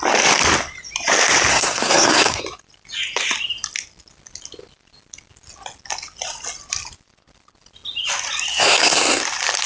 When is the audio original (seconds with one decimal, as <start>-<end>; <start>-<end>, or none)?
0.0-1.5; 2.4-8.5; 9.2-9.7